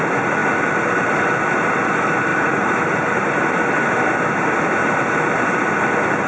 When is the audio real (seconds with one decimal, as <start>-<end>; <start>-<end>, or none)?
0.0-0.4; 1.4-2.3; 3.9-6.3